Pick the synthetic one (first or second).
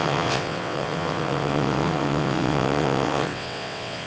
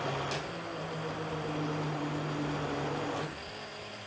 first